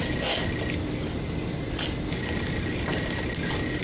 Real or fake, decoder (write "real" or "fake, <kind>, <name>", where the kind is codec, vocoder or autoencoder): real